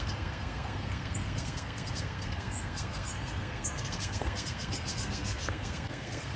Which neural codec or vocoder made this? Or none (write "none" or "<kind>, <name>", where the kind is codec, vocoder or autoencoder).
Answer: codec, SNAC